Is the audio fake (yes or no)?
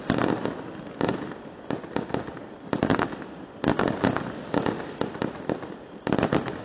no